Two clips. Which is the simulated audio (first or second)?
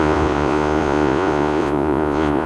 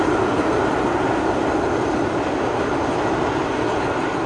first